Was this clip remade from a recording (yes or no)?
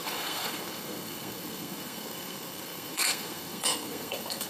yes